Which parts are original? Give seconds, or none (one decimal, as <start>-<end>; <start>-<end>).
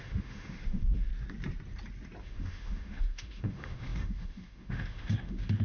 1.1-2.2